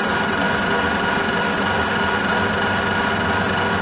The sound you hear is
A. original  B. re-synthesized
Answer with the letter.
A